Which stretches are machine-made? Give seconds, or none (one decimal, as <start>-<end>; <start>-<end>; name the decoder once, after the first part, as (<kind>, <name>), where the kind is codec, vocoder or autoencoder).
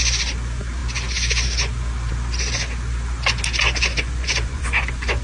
3.9-5.2 (vocoder, Vocos)